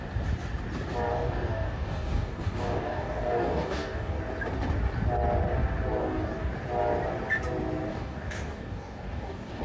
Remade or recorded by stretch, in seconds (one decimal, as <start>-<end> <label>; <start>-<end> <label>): 0.0-1.1 recorded; 1.1-4.2 remade; 4.2-6.0 recorded; 6.0-6.5 remade; 6.5-7.9 recorded; 7.9-9.6 remade